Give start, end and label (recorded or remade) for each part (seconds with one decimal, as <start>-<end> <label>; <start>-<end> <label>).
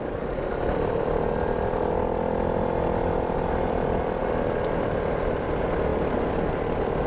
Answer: 0.0-7.1 recorded